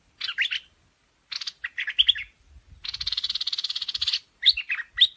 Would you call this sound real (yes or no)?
yes